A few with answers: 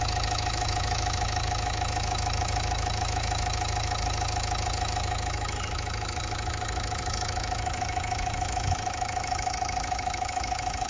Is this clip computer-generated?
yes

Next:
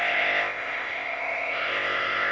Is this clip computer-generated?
yes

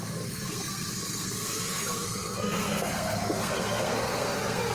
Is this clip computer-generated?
yes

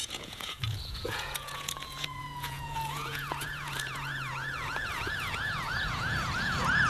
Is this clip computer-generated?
yes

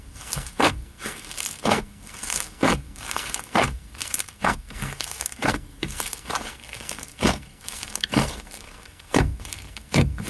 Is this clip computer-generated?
yes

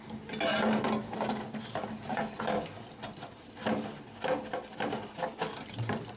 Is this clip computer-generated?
no